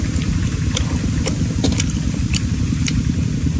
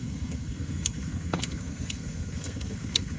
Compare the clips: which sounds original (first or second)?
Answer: first